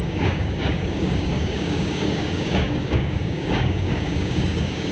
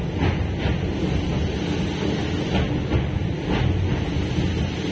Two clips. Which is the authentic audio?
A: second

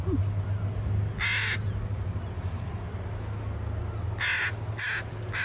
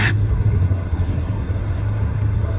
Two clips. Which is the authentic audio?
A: first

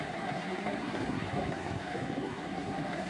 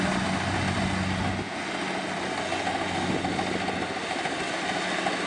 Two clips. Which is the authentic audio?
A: second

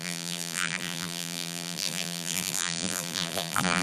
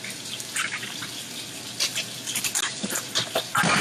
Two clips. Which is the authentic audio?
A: second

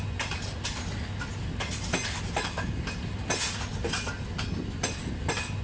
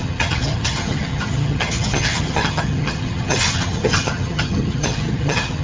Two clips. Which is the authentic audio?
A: first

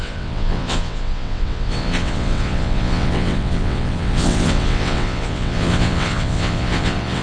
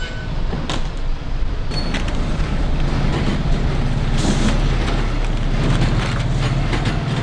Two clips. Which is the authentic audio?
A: second